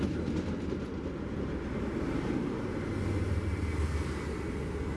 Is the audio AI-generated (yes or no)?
no